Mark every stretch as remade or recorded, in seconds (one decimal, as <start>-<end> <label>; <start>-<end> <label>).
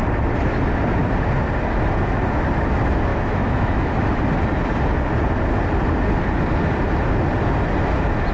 0.0-3.1 recorded; 3.1-3.9 remade; 3.9-8.3 recorded